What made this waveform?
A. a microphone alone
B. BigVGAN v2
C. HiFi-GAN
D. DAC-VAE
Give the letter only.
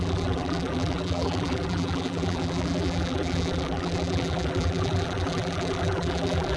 B